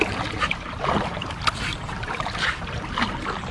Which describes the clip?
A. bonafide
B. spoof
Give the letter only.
A